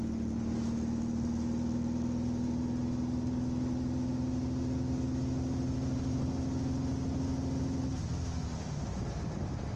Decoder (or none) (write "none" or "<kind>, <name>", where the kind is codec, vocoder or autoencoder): none